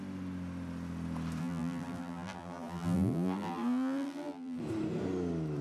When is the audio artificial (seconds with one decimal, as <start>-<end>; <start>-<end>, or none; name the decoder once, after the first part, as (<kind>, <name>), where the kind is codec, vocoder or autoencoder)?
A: 1.4-4.6 (vocoder, BigVGAN v2)